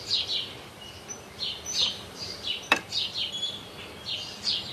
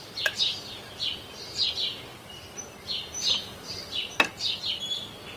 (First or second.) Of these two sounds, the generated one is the first